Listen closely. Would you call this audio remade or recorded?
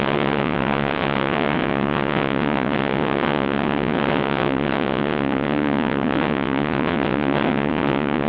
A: remade